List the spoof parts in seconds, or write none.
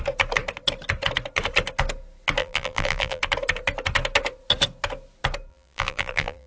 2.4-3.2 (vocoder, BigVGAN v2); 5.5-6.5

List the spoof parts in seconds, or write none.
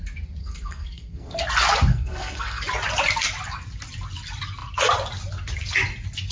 0.4-1.3 (codec, SNAC); 1.9-2.6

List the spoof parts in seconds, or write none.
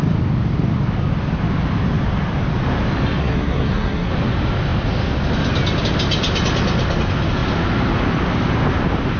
3.2-4.1 (codec, SNAC)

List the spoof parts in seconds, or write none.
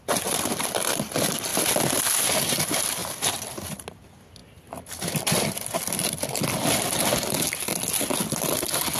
none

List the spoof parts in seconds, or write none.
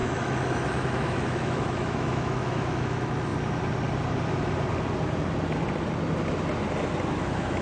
0.0-3.3 (autoencoder, DAC-VAE); 7.1-7.6